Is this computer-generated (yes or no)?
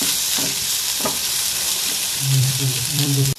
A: yes